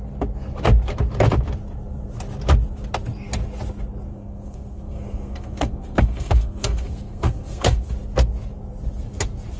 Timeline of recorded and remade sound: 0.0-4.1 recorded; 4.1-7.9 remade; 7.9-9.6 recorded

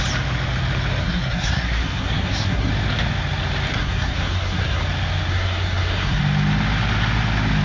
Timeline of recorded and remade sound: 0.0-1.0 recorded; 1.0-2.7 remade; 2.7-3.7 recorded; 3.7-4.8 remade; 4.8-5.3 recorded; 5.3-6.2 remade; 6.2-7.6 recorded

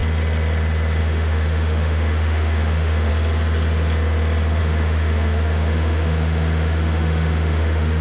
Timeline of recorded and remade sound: 0.0-1.0 recorded; 1.0-3.1 remade; 3.1-4.6 recorded; 4.6-8.0 remade

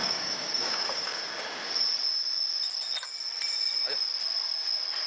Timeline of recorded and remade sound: 0.0-1.2 remade; 1.2-5.1 recorded

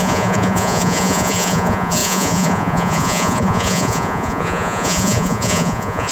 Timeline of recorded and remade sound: 0.0-6.1 remade

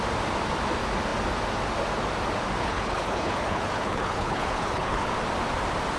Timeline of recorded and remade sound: 0.0-2.6 recorded; 2.6-5.1 remade; 5.1-6.0 recorded

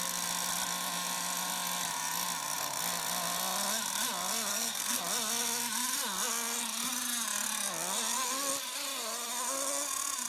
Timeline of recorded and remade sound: 0.0-4.5 recorded; 4.5-5.0 remade; 5.0-10.3 recorded

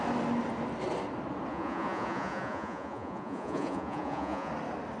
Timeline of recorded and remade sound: 0.0-1.5 recorded; 1.5-4.5 remade; 4.5-5.0 recorded